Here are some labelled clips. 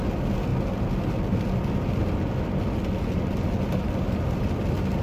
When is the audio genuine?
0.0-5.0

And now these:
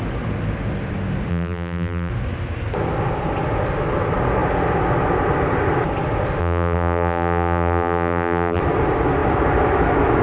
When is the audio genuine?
0.0-1.3; 2.1-6.4; 8.6-10.2

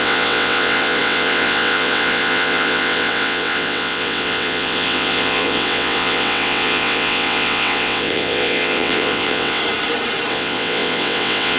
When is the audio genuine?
9.6-10.3

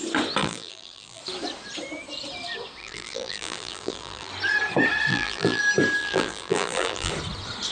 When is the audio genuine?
0.0-0.4; 1.2-2.8; 4.3-5.1; 5.6-6.0; 7.1-7.7

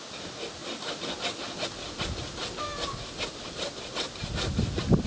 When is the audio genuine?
0.0-5.1

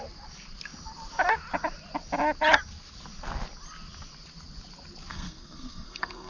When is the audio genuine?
0.0-5.1

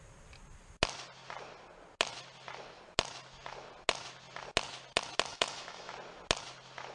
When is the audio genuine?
0.0-5.3; 5.9-6.9

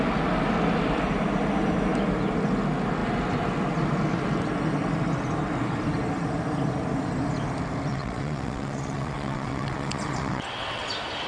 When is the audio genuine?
0.0-7.9; 10.9-11.3